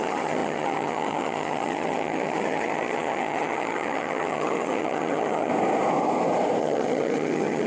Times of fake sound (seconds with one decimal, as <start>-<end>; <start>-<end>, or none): 0.0-5.5; 6.6-7.7